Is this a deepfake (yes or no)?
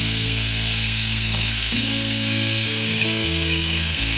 yes